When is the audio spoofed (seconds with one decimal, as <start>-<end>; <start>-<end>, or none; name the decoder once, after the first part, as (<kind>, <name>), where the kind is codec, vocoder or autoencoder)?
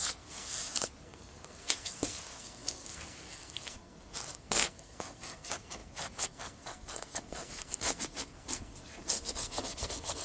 0.0-10.2 (codec, SNAC)